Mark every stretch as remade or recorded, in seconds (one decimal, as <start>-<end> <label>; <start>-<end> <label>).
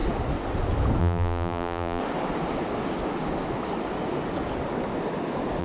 0.0-1.0 recorded; 1.0-2.0 remade; 2.0-5.6 recorded